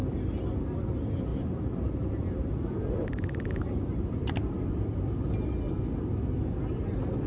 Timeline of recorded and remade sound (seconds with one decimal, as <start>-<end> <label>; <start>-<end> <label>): 0.0-1.3 recorded; 1.3-4.5 remade; 4.5-7.3 recorded